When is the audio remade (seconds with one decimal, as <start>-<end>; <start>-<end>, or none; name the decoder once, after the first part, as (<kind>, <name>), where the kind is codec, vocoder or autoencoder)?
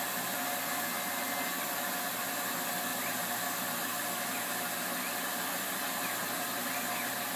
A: none